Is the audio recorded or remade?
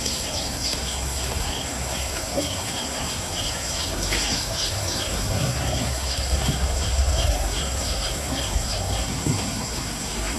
remade